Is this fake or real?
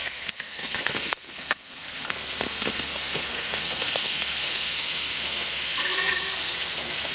fake